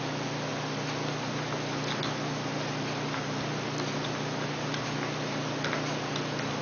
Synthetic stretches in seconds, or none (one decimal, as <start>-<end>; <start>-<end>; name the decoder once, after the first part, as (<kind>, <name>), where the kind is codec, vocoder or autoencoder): none